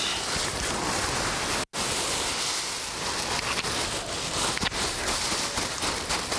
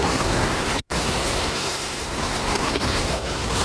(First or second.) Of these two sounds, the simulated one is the second